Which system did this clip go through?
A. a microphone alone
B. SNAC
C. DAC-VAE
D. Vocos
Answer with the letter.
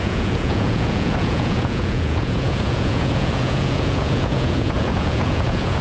D